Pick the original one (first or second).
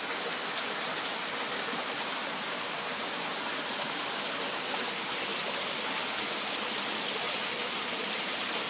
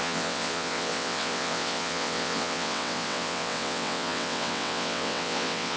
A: first